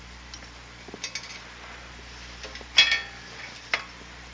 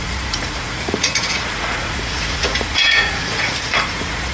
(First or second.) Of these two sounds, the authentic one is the first